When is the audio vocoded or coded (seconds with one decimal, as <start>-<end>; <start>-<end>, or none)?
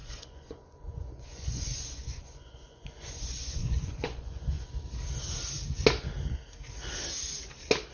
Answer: 0.0-4.7